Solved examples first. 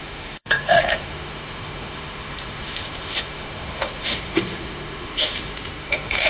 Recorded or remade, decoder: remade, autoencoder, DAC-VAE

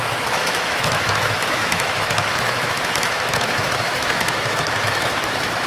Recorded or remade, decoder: remade, autoencoder, DAC-VAE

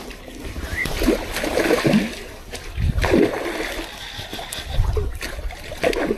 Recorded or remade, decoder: recorded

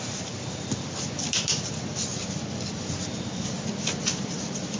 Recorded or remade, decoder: recorded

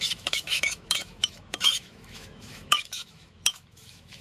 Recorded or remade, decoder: remade, autoencoder, DAC-VAE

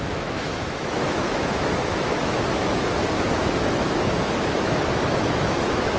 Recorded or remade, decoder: remade, autoencoder, DAC-VAE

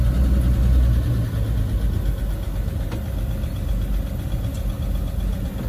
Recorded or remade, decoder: recorded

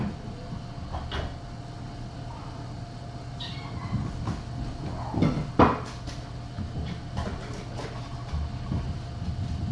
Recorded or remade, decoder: recorded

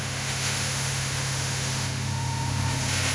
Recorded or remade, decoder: remade, autoencoder, DAC-VAE